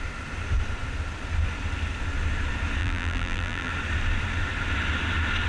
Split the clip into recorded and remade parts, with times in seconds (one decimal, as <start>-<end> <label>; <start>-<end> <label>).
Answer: 0.0-2.8 recorded; 2.8-3.7 remade; 3.7-5.5 recorded